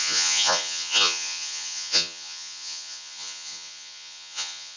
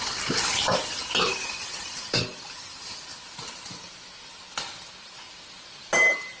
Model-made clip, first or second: first